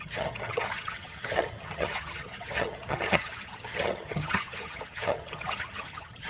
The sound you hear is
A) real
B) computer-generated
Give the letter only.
B